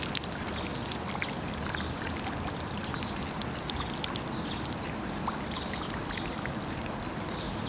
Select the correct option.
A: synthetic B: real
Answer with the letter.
B